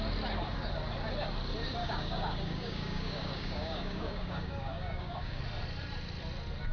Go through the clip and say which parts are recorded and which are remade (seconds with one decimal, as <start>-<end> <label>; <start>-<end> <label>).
0.0-1.8 recorded; 1.8-5.4 remade; 5.4-6.7 recorded